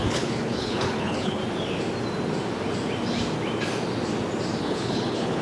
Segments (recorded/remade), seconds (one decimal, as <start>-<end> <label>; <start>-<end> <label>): 0.0-1.4 remade; 1.4-4.6 recorded; 4.6-5.4 remade